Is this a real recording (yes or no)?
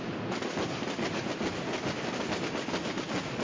yes